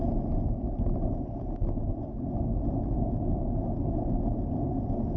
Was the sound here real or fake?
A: real